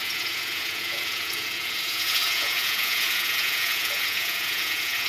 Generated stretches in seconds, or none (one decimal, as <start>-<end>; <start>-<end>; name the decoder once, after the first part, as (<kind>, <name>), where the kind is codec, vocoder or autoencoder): 0.0-5.1 (vocoder, Vocos)